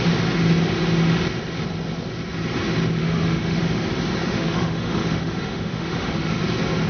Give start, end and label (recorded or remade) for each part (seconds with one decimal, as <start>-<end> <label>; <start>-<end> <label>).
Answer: 0.0-3.0 recorded; 3.0-3.6 remade; 3.6-4.2 recorded; 4.2-6.4 remade; 6.4-6.9 recorded